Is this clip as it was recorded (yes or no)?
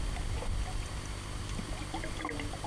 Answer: yes